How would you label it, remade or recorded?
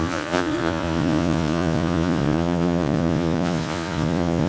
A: remade